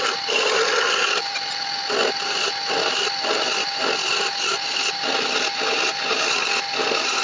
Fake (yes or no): no